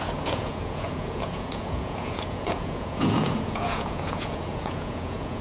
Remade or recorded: remade